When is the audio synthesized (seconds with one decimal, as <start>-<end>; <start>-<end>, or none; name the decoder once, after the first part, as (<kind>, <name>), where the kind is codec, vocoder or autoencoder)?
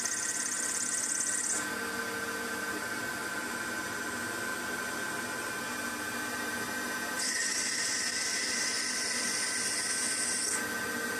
none